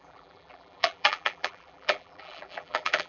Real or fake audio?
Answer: fake